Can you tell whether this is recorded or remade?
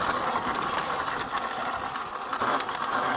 recorded